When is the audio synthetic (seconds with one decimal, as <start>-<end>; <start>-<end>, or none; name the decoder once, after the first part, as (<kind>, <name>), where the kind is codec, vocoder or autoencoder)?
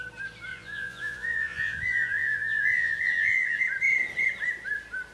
0.5-3.6 (vocoder, Vocos)